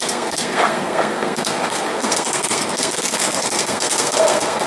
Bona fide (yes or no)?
no